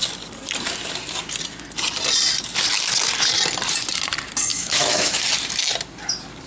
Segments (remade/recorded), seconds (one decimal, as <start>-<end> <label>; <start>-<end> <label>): 0.0-4.5 recorded; 4.5-5.2 remade; 5.2-6.5 recorded